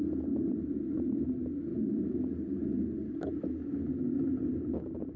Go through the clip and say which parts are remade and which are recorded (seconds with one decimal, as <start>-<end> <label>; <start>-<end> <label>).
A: 0.0-5.2 recorded

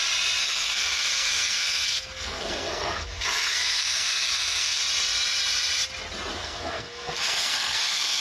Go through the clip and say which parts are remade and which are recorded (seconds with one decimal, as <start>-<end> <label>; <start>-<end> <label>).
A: 0.0-0.4 recorded; 0.4-4.8 remade; 4.8-6.4 recorded; 6.4-8.2 remade

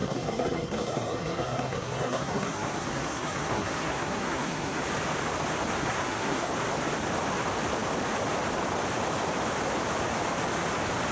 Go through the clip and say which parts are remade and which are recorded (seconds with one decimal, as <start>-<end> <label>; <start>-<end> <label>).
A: 0.0-4.8 remade; 4.8-5.8 recorded; 5.8-6.5 remade; 6.5-11.1 recorded

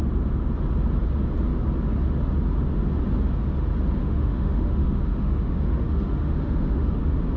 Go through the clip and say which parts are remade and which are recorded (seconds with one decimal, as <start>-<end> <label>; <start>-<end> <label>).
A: 0.0-4.0 recorded; 4.0-7.0 remade; 7.0-7.4 recorded

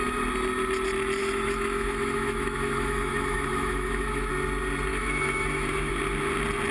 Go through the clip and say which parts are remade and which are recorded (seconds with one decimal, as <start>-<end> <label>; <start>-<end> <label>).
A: 0.0-1.2 recorded; 1.2-4.3 remade; 4.3-4.9 recorded; 4.9-5.9 remade; 5.9-6.7 recorded

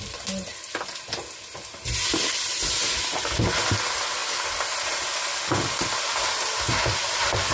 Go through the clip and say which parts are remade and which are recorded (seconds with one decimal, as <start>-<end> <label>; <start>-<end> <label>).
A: 0.0-7.5 recorded